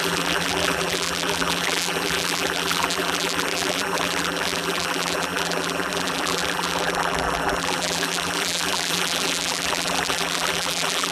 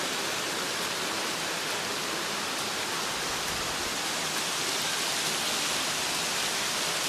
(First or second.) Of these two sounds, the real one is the second